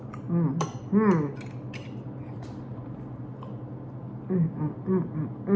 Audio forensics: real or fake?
real